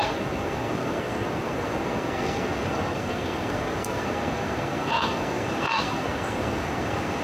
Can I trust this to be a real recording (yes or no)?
no